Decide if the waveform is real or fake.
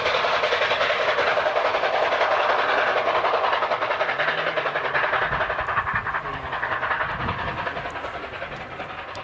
real